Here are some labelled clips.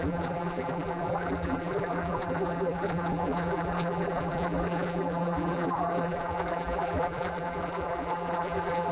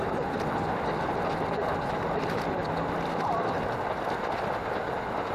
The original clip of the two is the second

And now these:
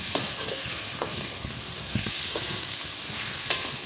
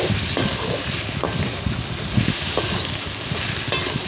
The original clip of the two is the second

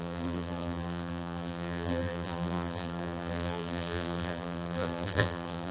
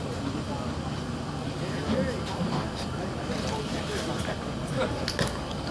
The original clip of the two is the second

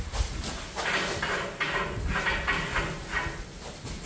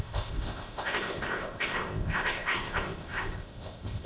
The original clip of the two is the first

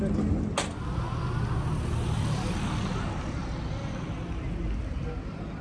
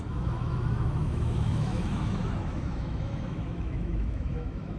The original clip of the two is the first